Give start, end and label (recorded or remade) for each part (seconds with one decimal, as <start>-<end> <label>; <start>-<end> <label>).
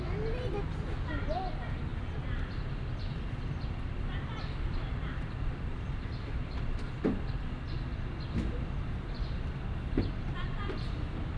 0.0-11.4 recorded